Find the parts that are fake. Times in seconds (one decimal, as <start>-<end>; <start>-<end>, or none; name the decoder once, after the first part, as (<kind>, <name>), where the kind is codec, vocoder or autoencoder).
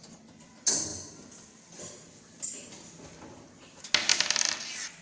none